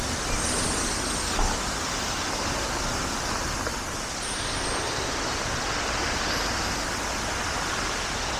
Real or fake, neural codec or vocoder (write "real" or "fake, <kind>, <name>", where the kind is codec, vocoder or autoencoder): real